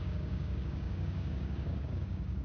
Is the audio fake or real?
fake